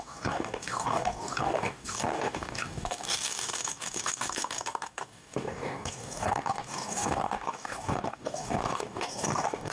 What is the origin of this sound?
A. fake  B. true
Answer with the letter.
A